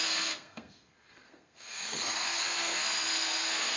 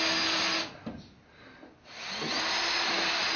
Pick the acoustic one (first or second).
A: second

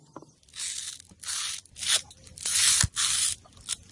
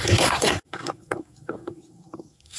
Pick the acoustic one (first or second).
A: first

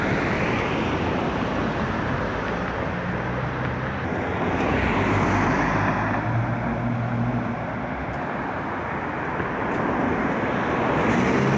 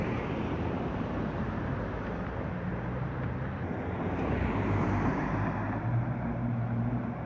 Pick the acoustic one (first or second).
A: first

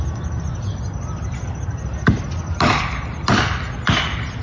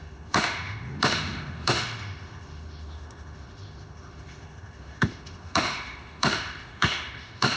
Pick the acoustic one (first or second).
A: first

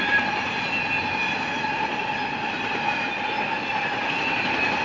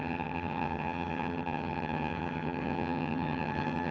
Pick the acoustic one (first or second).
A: first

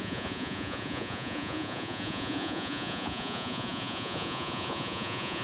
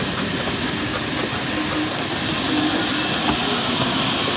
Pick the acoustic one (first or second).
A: second